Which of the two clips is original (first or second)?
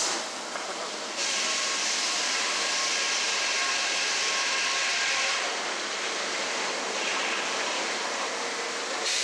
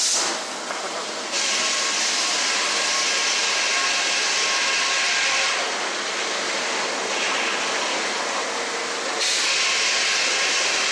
second